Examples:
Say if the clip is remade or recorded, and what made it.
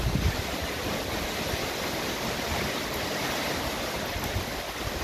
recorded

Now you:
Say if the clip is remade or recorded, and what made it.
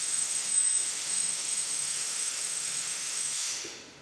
remade, autoencoder, DAC-VAE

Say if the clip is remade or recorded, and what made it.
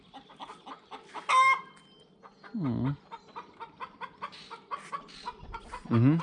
recorded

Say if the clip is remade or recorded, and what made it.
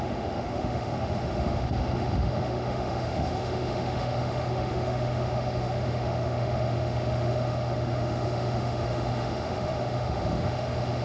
remade, autoencoder, DAC-VAE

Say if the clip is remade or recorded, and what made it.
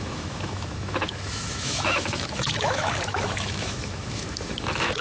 remade, autoencoder, DAC-VAE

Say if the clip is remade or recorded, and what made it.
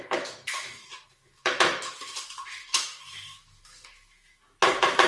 remade, autoencoder, DAC-VAE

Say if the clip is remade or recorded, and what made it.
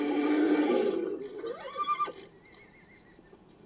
recorded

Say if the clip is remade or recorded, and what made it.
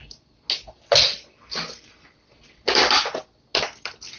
recorded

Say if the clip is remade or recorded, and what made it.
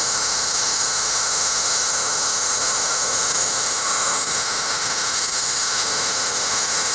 remade, autoencoder, DAC-VAE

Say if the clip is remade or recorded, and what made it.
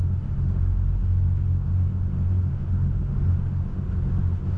remade, autoencoder, DAC-VAE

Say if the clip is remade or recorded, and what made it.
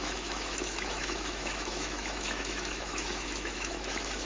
remade, autoencoder, DAC-VAE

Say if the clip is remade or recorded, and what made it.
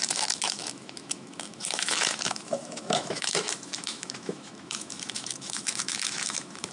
remade, autoencoder, DAC-VAE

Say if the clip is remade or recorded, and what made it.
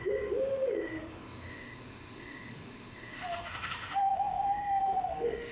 remade, autoencoder, DAC-VAE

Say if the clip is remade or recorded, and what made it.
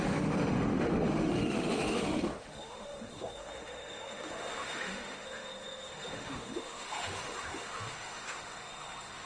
remade, autoencoder, DAC-VAE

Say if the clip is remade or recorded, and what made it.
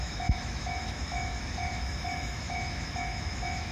remade, autoencoder, DAC-VAE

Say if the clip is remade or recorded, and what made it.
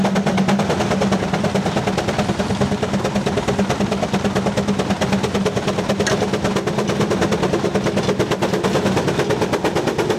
recorded